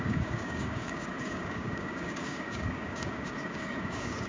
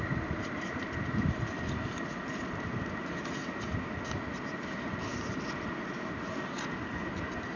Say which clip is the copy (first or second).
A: first